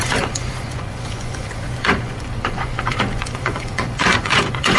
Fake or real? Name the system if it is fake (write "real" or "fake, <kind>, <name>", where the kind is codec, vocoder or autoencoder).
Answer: fake, vocoder, Vocos